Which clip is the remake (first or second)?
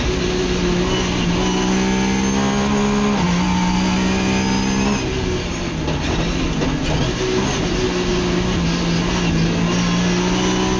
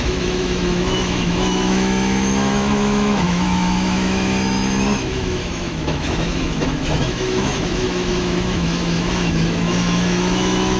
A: second